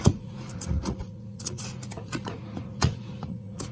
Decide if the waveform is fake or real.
fake